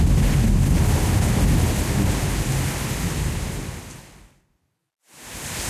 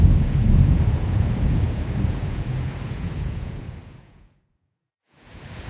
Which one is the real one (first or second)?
first